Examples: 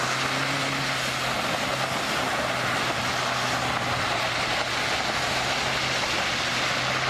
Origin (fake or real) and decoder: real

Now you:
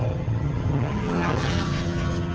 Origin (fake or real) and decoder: fake, vocoder, HiFi-GAN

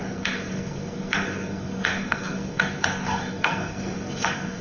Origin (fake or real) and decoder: fake, codec, SNAC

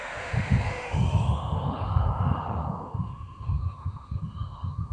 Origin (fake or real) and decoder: fake, autoencoder, DAC-VAE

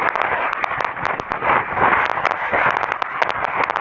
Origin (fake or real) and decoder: real